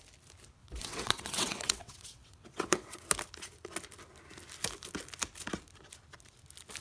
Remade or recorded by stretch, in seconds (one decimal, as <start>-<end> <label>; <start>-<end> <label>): 0.0-0.6 recorded; 0.6-3.1 remade; 3.1-6.8 recorded